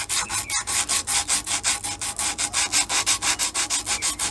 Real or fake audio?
real